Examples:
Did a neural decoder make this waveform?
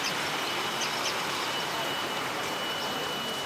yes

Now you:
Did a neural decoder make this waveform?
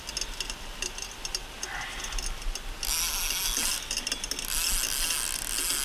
no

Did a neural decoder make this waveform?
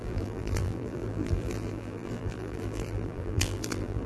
yes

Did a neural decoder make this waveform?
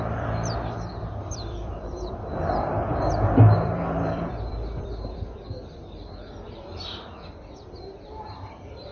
yes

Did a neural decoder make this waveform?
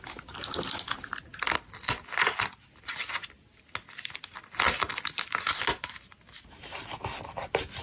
no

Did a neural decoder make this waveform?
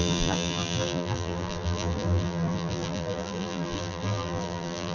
yes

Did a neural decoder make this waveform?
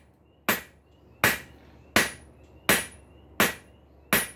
no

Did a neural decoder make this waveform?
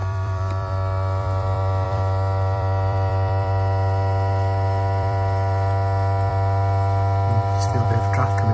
yes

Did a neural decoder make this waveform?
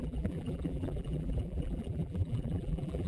yes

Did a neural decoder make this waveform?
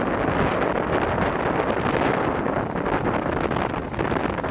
no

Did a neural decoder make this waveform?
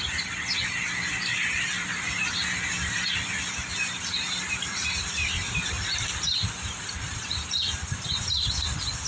yes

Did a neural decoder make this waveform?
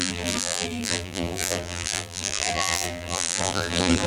yes